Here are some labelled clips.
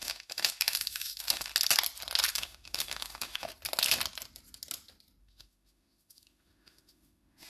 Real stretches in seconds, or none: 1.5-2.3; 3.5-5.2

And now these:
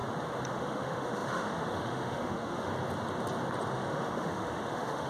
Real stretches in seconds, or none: 0.0-0.5; 2.7-3.7

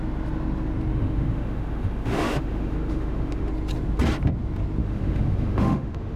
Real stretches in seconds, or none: 0.0-0.9; 3.5-4.8

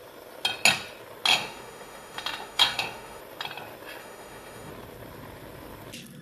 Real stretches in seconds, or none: 0.0-1.3; 3.2-4.0; 4.7-6.2

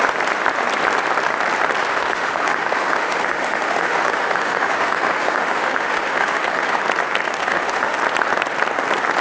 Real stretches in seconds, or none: 0.0-1.9; 6.8-7.4; 8.0-9.2

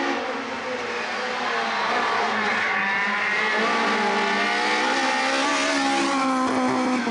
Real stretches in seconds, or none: 0.0-7.1

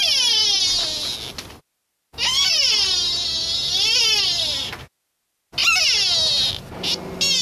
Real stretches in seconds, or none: 0.0-7.4

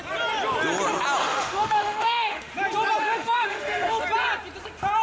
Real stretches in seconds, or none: 0.0-1.2; 2.5-3.0; 4.0-5.0